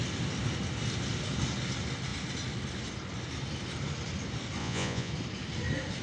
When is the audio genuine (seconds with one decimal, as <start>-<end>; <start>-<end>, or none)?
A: 0.0-4.6; 5.1-6.0